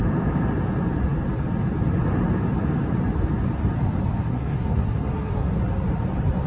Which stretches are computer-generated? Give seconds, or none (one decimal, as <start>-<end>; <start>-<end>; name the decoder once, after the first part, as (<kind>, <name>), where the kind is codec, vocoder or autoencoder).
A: 4.3-5.5 (codec, SNAC)